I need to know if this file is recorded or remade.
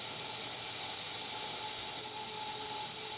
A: recorded